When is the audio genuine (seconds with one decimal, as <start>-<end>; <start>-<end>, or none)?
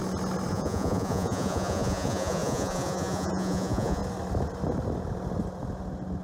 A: 0.0-0.5; 4.0-6.2